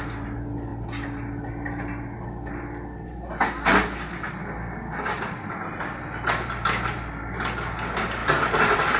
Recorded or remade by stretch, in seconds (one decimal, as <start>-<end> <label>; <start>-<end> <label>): 0.0-4.4 recorded; 4.4-5.2 remade; 5.2-9.0 recorded